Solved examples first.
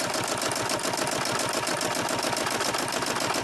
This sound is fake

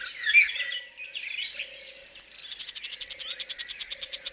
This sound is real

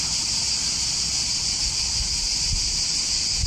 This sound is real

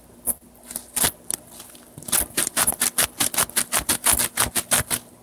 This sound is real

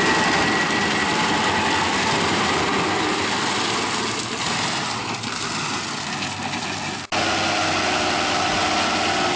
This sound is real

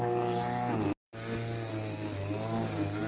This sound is real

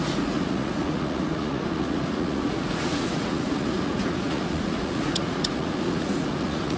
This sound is fake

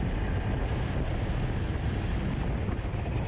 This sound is real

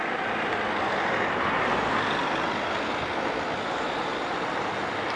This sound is real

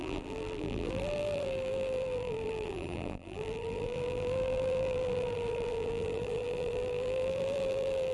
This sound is fake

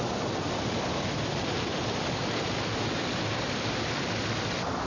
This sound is real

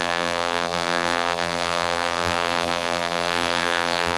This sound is fake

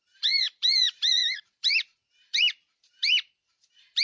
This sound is fake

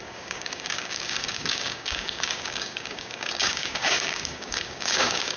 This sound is fake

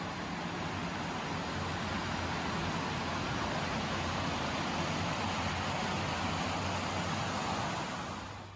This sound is real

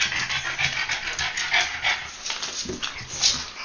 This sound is real